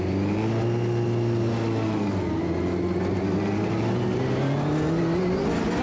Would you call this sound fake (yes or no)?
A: no